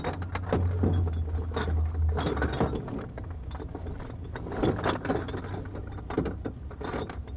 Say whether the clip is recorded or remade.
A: recorded